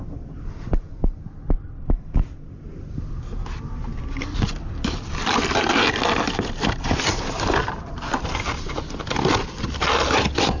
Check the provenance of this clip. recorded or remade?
recorded